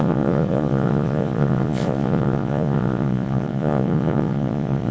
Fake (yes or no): yes